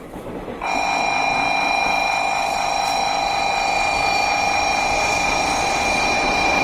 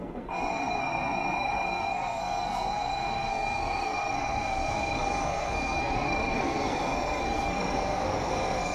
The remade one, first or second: second